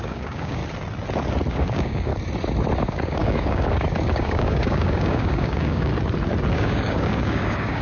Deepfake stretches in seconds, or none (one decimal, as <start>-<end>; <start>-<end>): 0.0-0.6; 1.5-2.1; 2.8-5.9; 6.5-7.8